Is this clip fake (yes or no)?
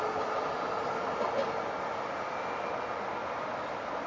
no